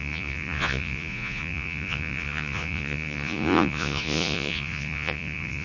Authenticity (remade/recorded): remade